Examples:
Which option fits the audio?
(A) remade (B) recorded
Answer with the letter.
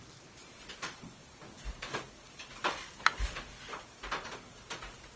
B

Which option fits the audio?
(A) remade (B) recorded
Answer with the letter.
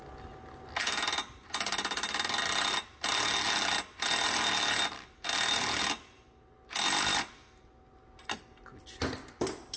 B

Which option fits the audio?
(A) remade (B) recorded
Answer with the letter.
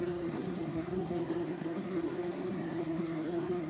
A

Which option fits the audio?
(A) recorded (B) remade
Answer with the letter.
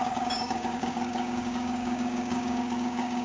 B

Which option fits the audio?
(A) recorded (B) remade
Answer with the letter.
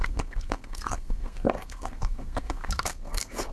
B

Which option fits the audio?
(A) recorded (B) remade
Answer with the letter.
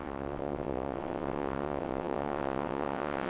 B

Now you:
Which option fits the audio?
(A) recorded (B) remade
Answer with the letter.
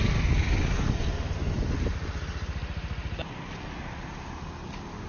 A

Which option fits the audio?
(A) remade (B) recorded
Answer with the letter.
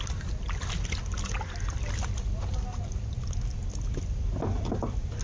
B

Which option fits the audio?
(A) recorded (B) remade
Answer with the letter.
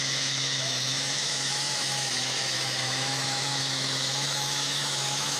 B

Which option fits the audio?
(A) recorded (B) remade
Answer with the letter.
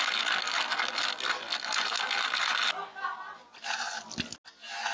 A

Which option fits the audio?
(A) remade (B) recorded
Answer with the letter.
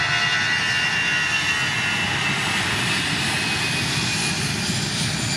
B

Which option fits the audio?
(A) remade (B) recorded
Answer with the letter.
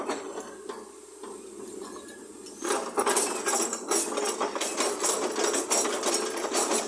B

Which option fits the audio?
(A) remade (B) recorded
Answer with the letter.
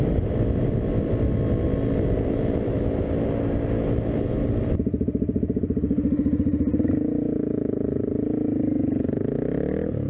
B